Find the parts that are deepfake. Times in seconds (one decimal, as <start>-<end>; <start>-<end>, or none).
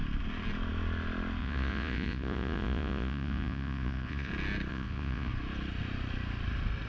1.4-4.3; 4.7-5.3